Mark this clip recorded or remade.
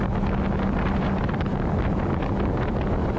recorded